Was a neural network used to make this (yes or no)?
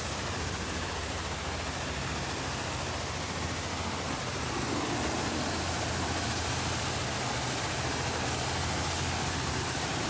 no